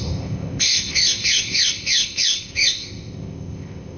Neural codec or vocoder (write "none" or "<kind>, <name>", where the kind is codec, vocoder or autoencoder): codec, ZipCodec